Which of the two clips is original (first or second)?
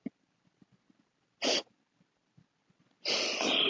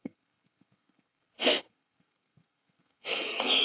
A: first